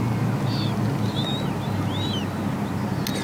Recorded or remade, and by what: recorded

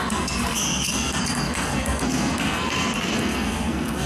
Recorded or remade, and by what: remade, codec, SNAC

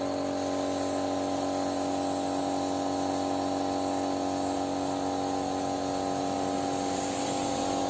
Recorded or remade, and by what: recorded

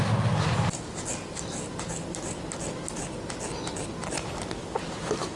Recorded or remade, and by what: recorded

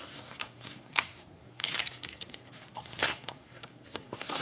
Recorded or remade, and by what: remade, codec, SNAC